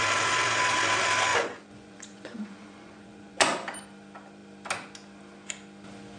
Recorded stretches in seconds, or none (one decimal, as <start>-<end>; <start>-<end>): 0.0-1.3; 3.5-6.2